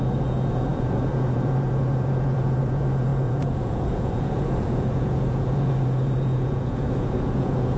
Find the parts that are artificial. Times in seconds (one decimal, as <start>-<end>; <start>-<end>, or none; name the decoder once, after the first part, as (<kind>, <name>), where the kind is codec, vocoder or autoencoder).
0.0-7.8 (vocoder, Vocos)